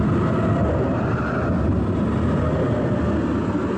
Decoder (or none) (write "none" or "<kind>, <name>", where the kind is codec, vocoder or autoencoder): none